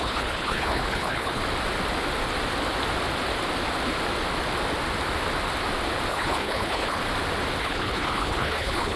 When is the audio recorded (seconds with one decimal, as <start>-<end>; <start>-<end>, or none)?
1.4-6.1; 7.0-7.6